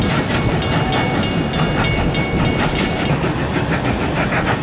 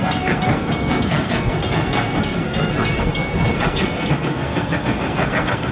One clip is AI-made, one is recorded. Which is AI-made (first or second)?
second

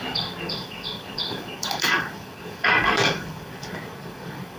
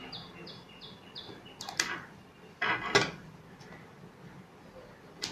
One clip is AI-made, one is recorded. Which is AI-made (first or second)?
first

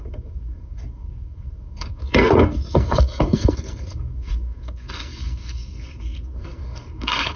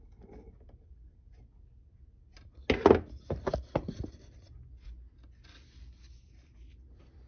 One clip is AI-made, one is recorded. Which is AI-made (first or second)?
first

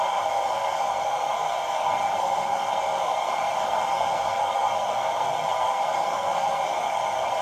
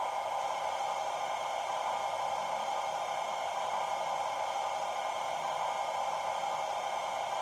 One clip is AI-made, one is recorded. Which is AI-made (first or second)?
first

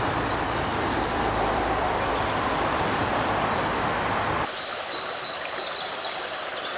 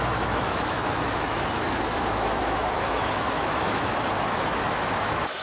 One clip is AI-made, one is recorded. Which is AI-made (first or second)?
second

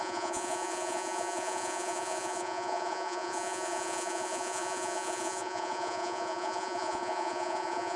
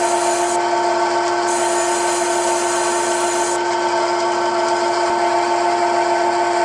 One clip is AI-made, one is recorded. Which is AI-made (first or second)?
first